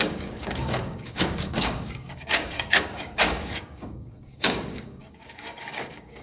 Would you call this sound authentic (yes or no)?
no